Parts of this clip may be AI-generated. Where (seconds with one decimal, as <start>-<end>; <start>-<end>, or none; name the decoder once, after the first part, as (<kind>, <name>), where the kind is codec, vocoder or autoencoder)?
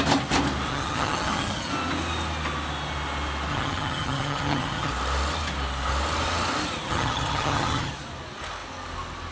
0.7-1.7 (vocoder, HiFi-GAN); 3.5-4.9; 6.9-7.9